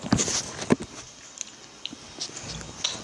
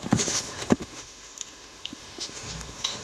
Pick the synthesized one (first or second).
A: second